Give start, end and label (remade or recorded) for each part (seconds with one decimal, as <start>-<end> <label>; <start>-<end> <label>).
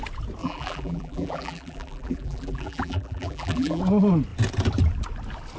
0.0-0.4 recorded; 0.4-3.8 remade; 3.8-5.6 recorded